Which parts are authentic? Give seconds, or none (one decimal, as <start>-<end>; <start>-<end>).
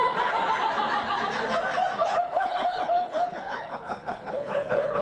0.0-2.0